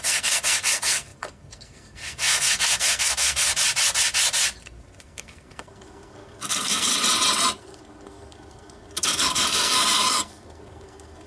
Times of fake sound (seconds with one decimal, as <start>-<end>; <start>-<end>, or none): 0.0-3.5; 4.6-6.9; 7.6-11.3